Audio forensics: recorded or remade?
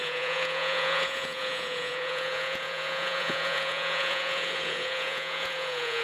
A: remade